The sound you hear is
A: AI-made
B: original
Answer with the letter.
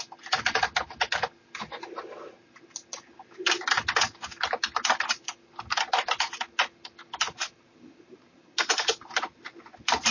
B